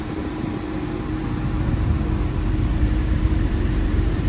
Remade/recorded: remade